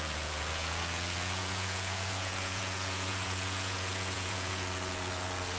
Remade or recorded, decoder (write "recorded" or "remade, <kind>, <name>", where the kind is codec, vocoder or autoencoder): remade, vocoder, Vocos